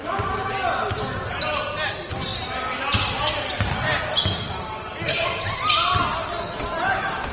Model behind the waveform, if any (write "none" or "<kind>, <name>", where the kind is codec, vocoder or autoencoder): none